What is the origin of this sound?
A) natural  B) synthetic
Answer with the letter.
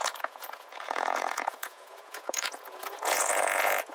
B